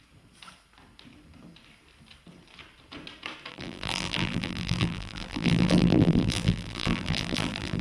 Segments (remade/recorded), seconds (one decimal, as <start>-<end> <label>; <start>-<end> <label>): 0.0-3.5 recorded; 3.5-7.8 remade